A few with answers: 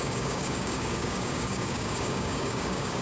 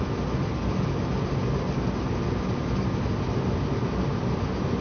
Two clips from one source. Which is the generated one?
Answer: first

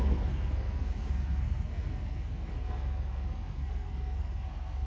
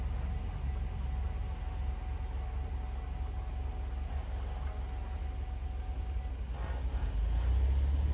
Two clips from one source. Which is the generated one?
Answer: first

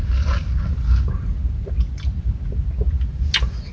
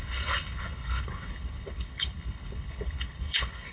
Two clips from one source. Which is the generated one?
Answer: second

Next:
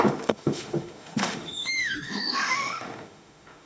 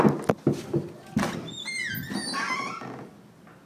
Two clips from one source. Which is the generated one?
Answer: first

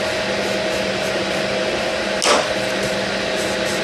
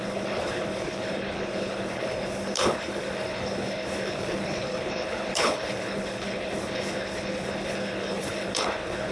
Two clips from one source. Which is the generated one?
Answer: second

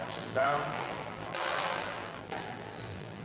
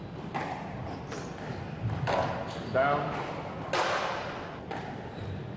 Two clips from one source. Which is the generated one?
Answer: first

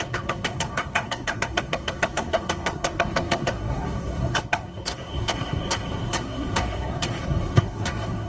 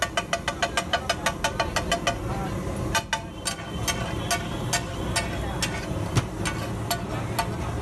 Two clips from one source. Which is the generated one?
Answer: first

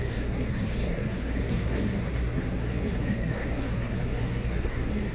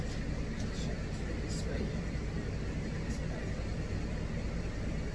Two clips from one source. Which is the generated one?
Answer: first